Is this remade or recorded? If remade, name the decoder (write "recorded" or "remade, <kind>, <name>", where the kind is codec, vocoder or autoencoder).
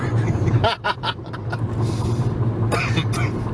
recorded